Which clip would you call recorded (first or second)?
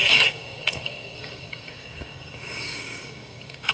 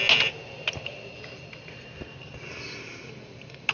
second